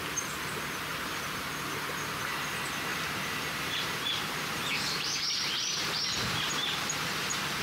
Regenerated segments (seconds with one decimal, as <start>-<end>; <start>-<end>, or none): 0.9-1.5; 2.9-7.6